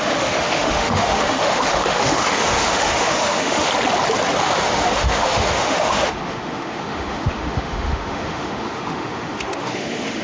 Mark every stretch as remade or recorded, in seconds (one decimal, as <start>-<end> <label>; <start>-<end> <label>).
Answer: 0.0-3.7 remade; 3.7-4.4 recorded; 4.4-10.2 remade